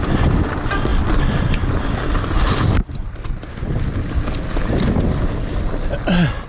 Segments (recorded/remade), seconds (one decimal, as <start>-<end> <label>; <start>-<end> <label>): 0.0-6.5 recorded